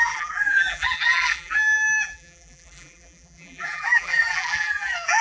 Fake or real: fake